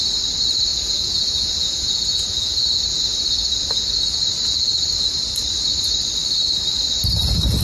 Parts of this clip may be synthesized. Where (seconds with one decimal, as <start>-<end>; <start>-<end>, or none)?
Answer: 0.7-2.8